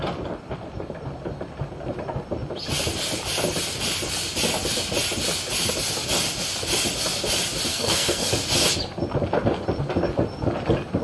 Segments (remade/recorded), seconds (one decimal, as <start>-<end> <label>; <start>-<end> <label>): 0.0-7.7 recorded; 7.7-8.3 remade; 8.3-11.0 recorded